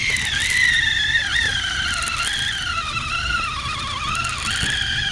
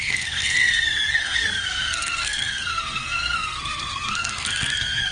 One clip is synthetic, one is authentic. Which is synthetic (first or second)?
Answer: second